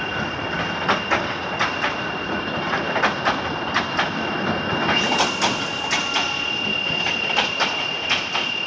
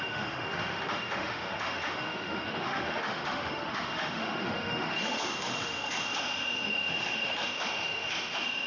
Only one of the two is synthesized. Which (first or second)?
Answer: second